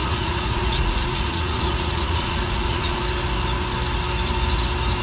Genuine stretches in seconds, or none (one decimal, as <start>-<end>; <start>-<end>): 3.0-5.0